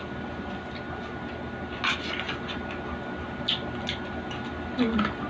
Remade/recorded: recorded